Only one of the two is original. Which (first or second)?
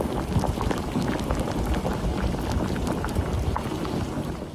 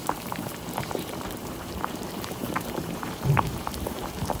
first